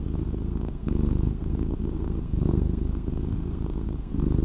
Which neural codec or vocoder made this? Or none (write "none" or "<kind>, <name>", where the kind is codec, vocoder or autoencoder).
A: codec, SNAC